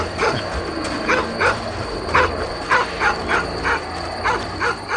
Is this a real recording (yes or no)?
yes